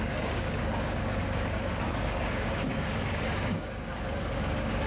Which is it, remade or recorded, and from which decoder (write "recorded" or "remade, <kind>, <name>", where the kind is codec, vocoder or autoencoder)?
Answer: remade, codec, DAC